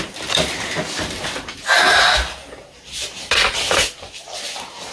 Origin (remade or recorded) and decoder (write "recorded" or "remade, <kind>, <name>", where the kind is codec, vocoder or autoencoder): recorded